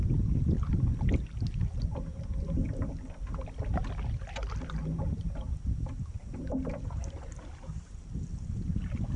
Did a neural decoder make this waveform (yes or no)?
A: no